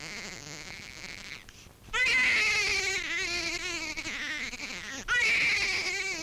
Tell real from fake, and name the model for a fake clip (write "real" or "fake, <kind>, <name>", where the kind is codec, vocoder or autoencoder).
real